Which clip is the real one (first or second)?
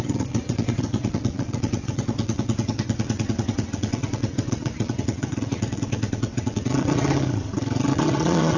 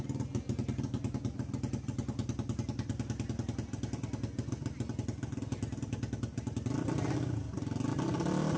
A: second